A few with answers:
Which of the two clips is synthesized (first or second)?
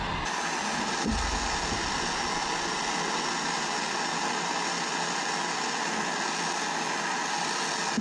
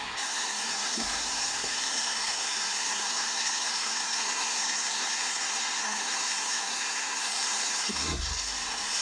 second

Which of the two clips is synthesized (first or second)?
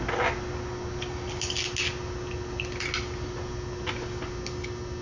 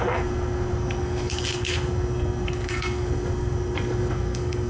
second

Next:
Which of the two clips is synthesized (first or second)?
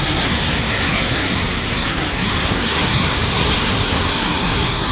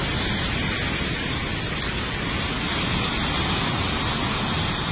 first